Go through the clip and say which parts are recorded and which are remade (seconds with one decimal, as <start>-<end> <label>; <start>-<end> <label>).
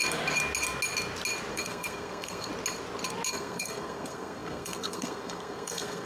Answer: 0.0-1.5 recorded; 1.5-2.5 remade; 2.5-3.3 recorded; 3.3-6.1 remade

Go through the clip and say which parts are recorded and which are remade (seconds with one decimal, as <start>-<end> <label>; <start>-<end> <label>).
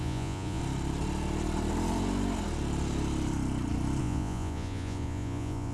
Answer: 0.0-0.6 remade; 0.6-4.0 recorded; 4.0-5.7 remade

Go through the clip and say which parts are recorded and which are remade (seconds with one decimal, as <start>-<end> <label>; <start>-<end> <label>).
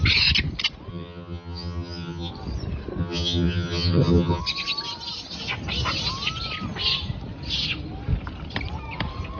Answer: 0.0-0.9 recorded; 0.9-2.3 remade; 2.3-3.0 recorded; 3.0-4.4 remade; 4.4-9.4 recorded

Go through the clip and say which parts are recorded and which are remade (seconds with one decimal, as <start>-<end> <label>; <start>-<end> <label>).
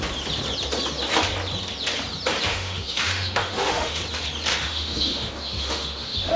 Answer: 0.0-2.5 recorded; 2.5-4.0 remade; 4.0-4.5 recorded; 4.5-6.4 remade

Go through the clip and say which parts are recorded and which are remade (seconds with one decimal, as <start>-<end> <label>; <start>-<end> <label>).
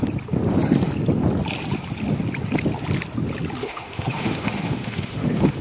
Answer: 0.0-3.6 recorded; 3.6-5.6 remade